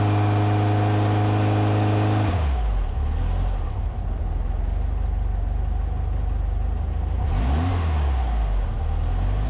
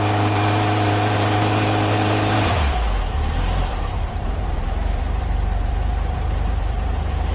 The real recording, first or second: first